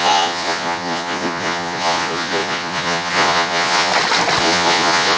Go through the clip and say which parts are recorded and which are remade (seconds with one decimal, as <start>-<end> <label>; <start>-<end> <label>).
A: 0.0-3.9 remade; 3.9-4.4 recorded; 4.4-5.2 remade